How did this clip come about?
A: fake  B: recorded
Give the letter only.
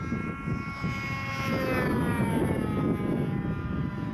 B